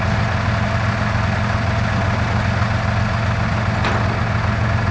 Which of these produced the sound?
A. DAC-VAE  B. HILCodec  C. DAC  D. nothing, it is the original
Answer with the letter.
D